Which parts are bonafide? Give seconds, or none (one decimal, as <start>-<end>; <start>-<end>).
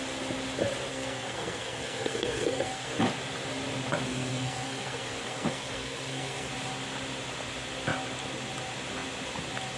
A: 0.0-0.9; 3.0-4.1; 6.5-9.8